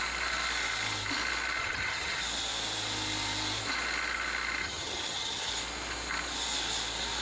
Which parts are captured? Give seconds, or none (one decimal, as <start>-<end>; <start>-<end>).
0.0-1.6; 2.2-4.6; 5.5-7.2